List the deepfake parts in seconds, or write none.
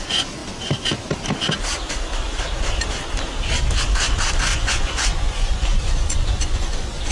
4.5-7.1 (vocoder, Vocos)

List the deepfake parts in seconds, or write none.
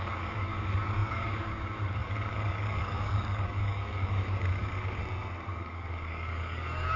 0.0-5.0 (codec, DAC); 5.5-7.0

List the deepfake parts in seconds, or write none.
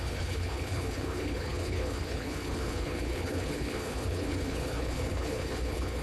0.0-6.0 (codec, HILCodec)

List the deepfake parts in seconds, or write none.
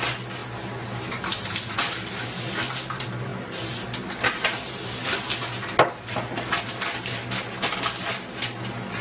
none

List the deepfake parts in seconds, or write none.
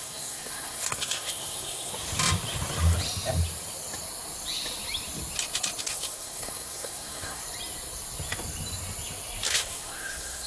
0.0-1.9 (codec, SNAC); 5.8-7.4; 9.5-10.5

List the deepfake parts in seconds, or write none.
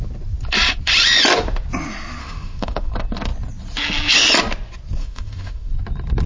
2.2-2.9 (autoencoder, DAC-VAE); 5.0-5.7